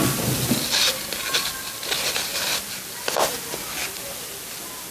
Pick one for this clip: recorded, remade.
recorded